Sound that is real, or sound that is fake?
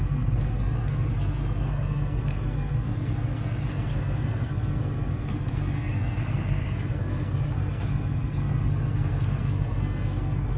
fake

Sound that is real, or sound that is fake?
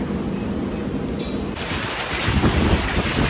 real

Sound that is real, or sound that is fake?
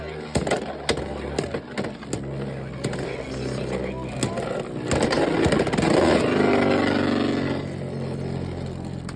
real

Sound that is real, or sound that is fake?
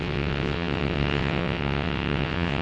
fake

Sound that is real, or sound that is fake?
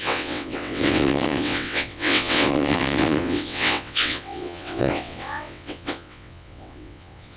fake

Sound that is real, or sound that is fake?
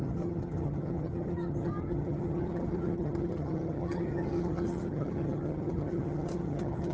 fake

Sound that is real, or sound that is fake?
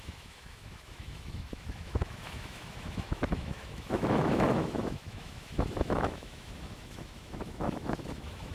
fake